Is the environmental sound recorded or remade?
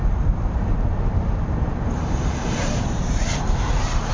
remade